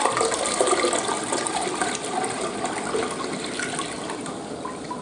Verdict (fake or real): real